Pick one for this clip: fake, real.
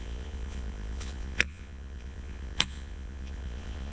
fake